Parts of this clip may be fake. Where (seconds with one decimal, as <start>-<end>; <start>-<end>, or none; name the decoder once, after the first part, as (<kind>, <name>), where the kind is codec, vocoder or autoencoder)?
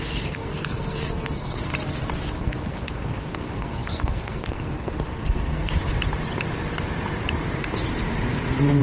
0.0-1.7 (codec, SNAC); 2.4-5.8